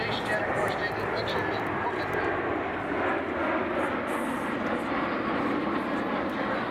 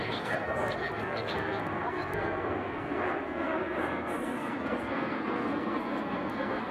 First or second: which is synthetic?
second